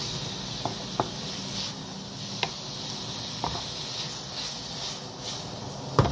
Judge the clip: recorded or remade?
recorded